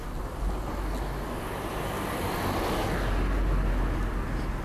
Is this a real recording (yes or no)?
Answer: yes